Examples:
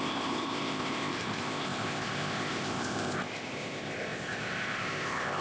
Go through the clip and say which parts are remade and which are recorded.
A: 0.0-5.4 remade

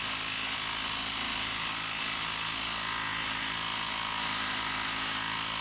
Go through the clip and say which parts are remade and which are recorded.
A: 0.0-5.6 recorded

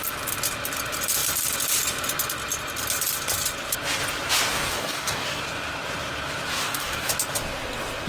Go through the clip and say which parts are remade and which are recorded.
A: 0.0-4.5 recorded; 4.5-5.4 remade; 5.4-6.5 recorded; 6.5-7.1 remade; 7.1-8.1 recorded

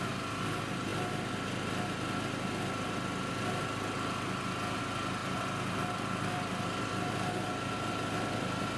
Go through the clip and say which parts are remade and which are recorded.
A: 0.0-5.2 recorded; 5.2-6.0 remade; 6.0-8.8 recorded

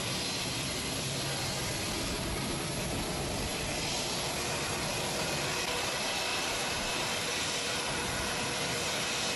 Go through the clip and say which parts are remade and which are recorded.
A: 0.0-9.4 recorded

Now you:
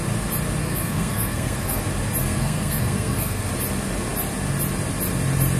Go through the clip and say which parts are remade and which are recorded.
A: 0.0-0.6 recorded; 0.6-1.8 remade; 1.8-2.2 recorded; 2.2-3.5 remade; 3.5-5.6 recorded

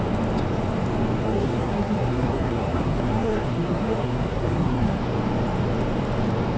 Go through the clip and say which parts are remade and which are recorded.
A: 0.0-1.2 recorded; 1.2-5.0 remade; 5.0-6.6 recorded

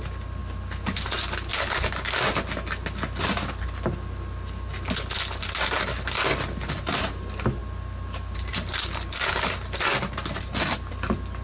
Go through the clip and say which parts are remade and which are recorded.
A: 0.0-11.4 recorded